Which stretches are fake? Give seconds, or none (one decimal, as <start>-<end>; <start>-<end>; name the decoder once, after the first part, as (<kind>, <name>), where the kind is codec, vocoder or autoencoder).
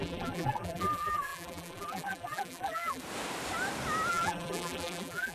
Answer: 0.0-3.0 (vocoder, BigVGAN v2); 4.1-5.3